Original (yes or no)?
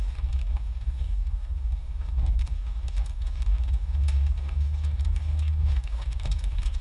no